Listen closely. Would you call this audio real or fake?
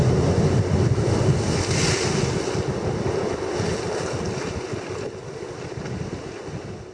real